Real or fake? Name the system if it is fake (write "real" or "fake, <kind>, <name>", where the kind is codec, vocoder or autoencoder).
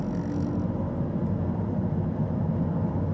real